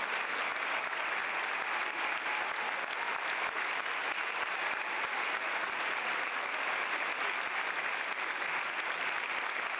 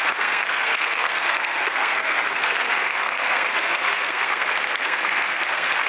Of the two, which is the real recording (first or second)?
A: first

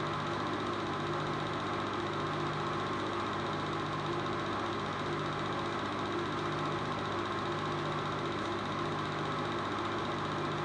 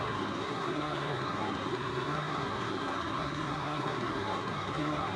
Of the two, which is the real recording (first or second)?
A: first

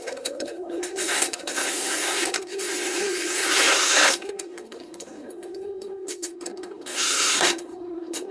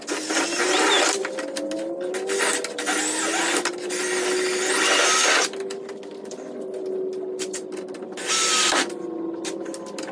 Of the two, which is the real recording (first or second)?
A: second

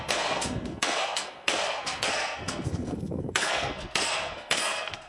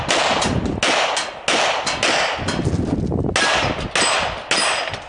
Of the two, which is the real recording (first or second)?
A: second